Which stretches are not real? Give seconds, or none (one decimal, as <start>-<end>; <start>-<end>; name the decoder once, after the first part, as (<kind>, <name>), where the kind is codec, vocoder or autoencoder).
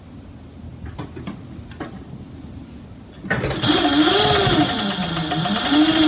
none